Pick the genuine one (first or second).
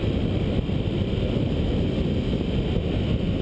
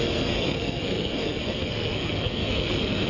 first